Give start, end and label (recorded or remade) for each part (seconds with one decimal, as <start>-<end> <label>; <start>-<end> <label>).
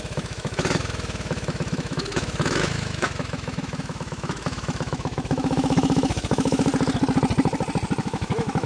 0.0-6.7 remade; 6.7-8.0 recorded; 8.0-8.7 remade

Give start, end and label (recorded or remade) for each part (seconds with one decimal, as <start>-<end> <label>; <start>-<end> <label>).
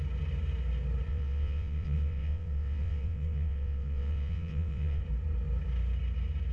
0.0-1.1 recorded; 1.1-5.0 remade; 5.0-6.5 recorded